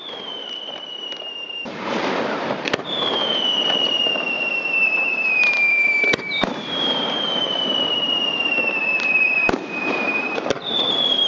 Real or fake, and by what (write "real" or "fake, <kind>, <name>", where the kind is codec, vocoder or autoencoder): fake, vocoder, BigVGAN v2